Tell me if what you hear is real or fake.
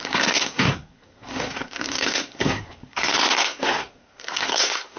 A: fake